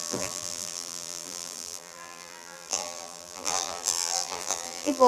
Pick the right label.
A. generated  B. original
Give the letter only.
A